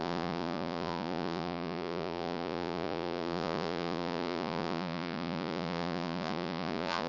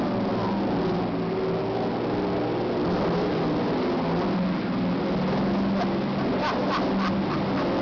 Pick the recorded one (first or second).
second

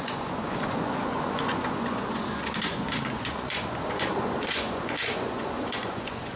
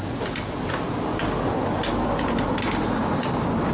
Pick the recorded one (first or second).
second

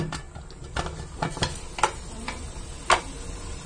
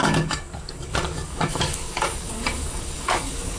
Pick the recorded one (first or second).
first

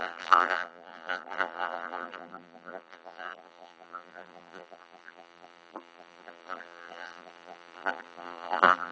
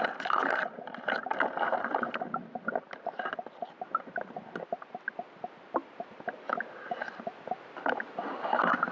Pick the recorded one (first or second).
second